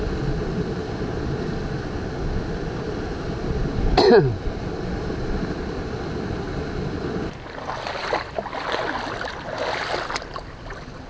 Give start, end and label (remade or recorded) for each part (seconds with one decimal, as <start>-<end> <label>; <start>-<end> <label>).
0.0-11.1 recorded